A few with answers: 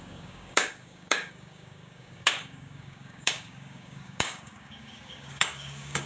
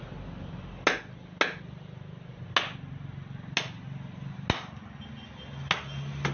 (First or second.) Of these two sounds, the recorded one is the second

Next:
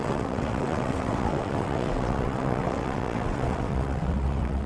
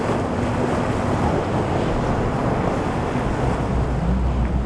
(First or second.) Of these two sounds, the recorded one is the second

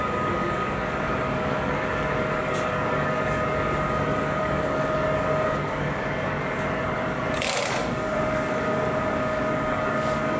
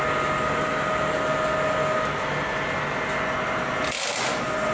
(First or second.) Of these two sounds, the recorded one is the second